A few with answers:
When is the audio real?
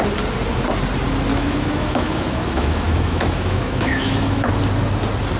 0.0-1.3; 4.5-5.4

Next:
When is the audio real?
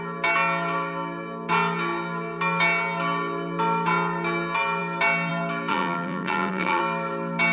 0.0-5.7; 6.8-7.5